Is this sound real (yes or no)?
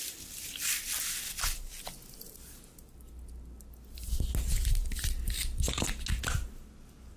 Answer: yes